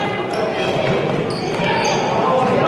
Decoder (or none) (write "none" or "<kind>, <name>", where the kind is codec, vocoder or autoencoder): none